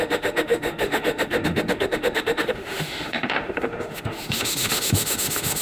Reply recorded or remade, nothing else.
remade